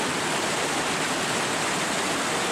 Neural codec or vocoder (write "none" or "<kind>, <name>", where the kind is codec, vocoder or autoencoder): none